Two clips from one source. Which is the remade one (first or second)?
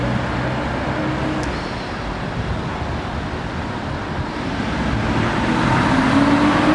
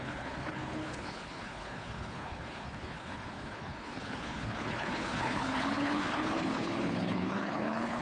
second